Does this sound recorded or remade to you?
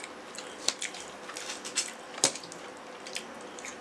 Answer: recorded